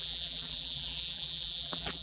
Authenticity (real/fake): fake